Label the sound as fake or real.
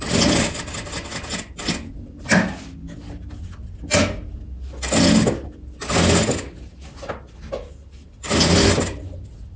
real